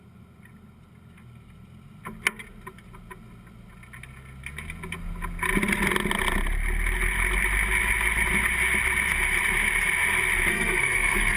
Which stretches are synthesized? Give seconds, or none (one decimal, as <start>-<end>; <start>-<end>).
10.5-11.4